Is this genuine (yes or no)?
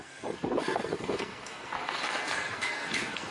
no